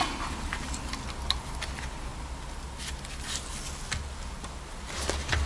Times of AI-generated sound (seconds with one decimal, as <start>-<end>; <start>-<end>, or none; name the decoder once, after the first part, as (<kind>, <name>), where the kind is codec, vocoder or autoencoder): none